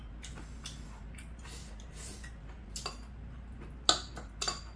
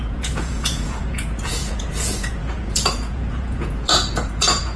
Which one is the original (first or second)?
first